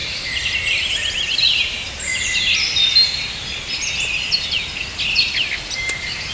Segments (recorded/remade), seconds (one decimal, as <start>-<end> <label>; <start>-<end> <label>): 0.0-6.3 recorded